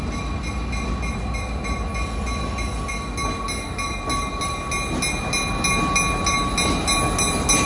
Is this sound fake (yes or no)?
no